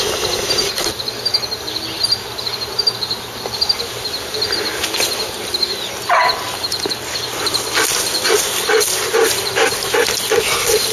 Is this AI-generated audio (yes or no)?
no